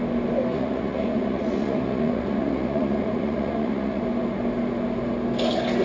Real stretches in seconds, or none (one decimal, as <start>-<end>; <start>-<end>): 0.0-0.5; 4.0-5.8